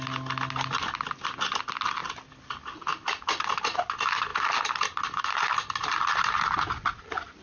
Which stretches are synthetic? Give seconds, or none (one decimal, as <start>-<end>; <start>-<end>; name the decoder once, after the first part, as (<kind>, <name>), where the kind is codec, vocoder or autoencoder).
none